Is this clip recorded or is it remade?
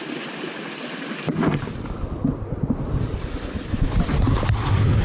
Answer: recorded